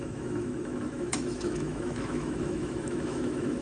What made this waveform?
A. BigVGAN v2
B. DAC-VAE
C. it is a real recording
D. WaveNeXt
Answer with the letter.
B